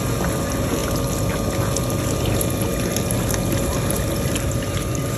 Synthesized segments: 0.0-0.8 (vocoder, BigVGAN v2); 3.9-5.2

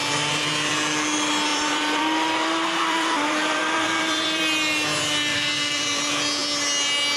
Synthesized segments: 0.0-0.7 (vocoder, BigVGAN v2); 1.5-4.4; 5.3-6.0

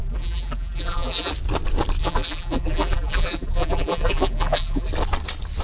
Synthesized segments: 0.0-1.3 (vocoder, BigVGAN v2); 2.0-4.9

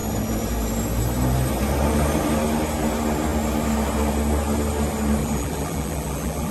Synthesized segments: 5.2-6.5 (vocoder, BigVGAN v2)

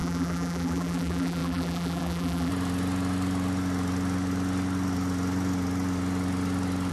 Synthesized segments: 0.0-2.5 (vocoder, BigVGAN v2)

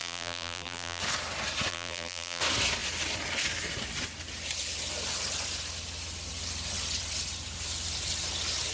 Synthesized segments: 0.0-1.0 (vocoder, BigVGAN v2); 1.7-2.4

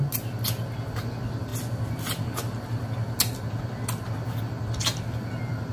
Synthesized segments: none

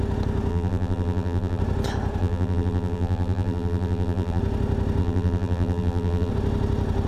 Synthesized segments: 0.5-1.6 (vocoder, BigVGAN v2); 2.2-4.4; 5.0-6.3